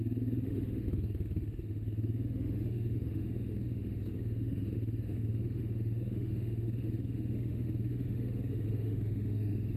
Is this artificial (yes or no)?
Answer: yes